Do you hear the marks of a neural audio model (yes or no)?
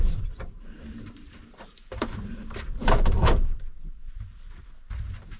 yes